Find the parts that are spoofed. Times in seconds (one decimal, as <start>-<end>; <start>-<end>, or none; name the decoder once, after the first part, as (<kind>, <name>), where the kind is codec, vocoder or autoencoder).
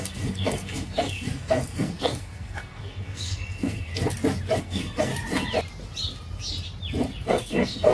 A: 0.0-3.9 (codec, SNAC); 4.6-5.1; 7.3-7.9